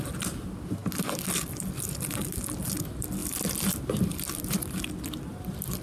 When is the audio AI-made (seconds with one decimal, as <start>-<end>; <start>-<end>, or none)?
3.2-5.8